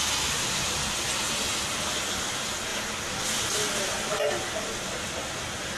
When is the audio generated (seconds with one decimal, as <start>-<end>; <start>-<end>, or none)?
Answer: none